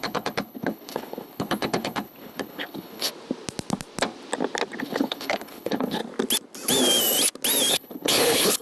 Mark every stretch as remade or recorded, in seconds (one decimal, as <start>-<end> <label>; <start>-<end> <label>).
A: 0.0-3.1 remade; 3.1-4.8 recorded; 4.8-6.0 remade; 6.0-7.7 recorded; 7.7-8.6 remade

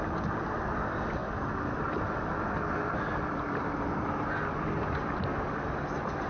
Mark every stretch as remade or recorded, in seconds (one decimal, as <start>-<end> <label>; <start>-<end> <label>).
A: 0.0-6.3 recorded

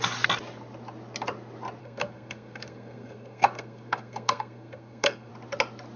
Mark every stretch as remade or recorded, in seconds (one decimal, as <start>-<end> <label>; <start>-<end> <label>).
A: 0.0-1.8 recorded; 1.8-5.3 remade; 5.3-6.0 recorded

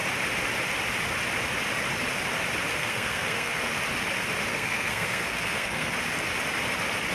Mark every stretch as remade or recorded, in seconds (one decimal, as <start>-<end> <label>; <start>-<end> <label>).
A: 0.0-2.7 recorded; 2.7-3.7 remade; 3.7-4.5 recorded; 4.5-5.9 remade; 5.9-7.1 recorded

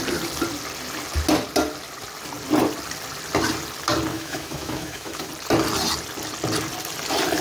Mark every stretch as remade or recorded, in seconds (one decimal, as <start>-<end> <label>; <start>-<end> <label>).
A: 0.0-4.1 recorded; 4.1-5.3 remade; 5.3-7.4 recorded